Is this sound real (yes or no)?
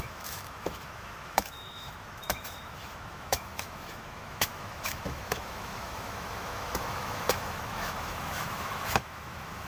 no